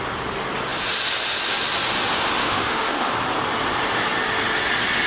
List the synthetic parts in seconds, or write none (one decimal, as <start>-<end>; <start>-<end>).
2.4-3.1